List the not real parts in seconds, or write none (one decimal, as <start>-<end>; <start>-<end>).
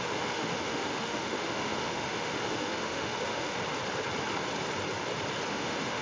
0.0-3.6; 5.5-6.0